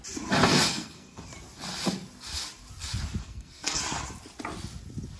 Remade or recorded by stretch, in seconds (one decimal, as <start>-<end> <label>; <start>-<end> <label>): 0.0-0.5 recorded; 0.5-1.2 remade; 1.2-3.2 recorded; 3.2-3.8 remade; 3.8-5.2 recorded